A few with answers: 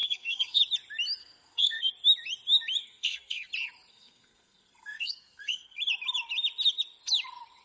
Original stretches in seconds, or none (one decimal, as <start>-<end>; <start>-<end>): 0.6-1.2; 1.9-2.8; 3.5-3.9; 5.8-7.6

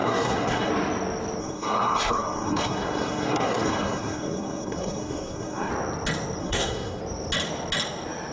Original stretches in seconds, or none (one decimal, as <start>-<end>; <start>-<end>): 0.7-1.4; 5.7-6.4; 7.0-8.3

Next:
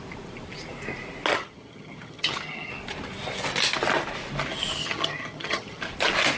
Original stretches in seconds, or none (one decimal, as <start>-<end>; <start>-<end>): 0.0-1.3; 2.7-4.8; 5.8-6.4

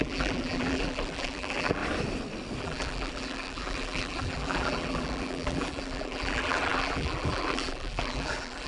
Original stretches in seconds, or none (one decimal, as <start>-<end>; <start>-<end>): 1.8-2.6

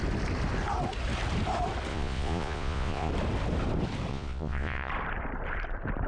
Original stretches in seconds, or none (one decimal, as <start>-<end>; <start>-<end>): 0.0-1.9; 3.1-4.1; 4.9-6.1

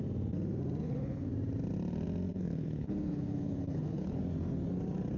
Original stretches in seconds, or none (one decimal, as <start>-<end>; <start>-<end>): 0.0-0.8; 1.3-2.3; 4.2-5.2

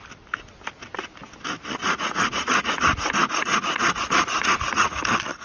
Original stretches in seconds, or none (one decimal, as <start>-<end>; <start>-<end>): 0.0-1.8; 5.0-5.4

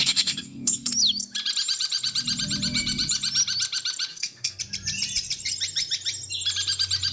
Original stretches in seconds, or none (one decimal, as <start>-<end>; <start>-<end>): 0.9-4.1; 4.6-7.1